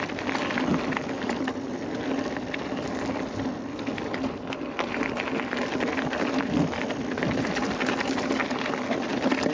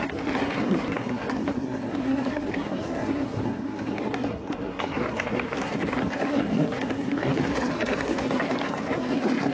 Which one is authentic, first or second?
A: first